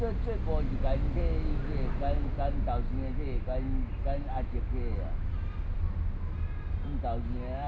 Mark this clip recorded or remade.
recorded